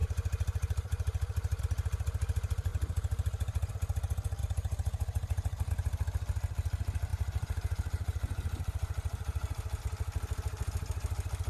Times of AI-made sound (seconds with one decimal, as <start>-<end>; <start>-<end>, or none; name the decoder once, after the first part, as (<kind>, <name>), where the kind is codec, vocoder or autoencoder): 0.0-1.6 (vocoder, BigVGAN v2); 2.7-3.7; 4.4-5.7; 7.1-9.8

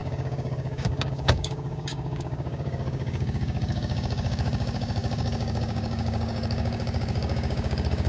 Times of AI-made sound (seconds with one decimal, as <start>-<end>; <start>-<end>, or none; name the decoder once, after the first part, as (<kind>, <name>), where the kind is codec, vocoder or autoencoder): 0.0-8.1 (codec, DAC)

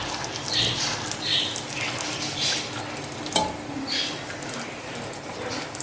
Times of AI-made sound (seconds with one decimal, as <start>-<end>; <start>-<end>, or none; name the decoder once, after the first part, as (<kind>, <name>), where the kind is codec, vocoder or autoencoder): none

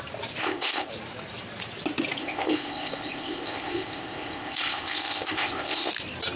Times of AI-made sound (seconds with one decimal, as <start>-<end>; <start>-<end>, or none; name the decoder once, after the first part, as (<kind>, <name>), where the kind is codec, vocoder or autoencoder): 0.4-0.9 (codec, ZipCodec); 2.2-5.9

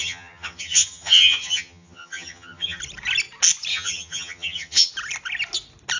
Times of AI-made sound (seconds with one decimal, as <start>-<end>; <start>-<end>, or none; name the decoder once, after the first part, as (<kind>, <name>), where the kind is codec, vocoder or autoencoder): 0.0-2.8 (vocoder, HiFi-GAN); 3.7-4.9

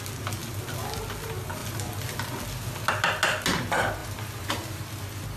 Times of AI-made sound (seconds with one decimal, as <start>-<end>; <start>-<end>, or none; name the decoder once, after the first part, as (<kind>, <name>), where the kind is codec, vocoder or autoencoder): 4.0-4.8 (vocoder, BigVGAN v2)

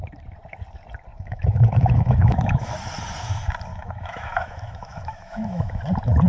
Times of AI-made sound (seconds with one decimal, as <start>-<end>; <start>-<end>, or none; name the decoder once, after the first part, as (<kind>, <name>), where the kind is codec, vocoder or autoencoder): 1.1-2.7 (autoencoder, DAC-VAE); 3.7-5.8

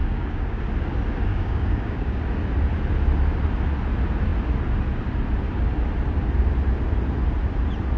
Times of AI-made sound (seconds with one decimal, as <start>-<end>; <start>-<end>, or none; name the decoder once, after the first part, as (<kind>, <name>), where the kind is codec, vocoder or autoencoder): 0.0-0.6 (codec, DAC); 1.3-2.2